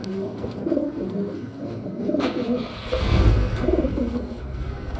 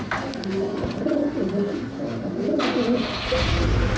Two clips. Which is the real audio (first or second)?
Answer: second